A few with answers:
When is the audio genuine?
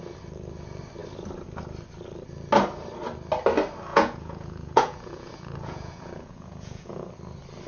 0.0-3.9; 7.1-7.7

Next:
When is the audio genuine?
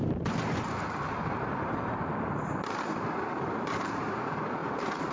none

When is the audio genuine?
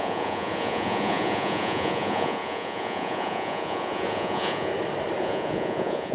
4.7-5.2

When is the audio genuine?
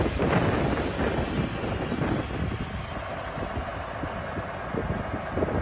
0.0-5.6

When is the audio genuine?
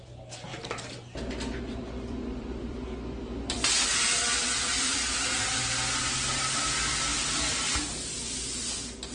0.0-0.5; 5.6-9.1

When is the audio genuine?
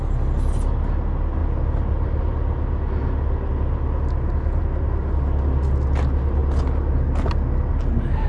0.0-8.3